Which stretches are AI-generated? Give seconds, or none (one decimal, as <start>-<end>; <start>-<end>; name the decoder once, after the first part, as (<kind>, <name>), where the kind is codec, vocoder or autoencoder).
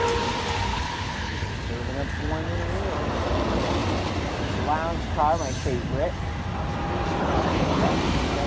0.7-1.5 (codec, HILCodec); 7.2-7.9